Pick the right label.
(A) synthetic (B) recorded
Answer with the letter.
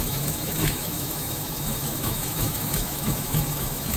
A